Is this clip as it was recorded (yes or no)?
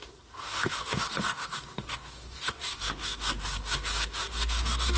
no